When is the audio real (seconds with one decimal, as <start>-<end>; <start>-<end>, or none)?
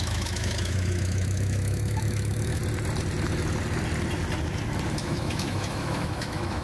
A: 2.6-5.0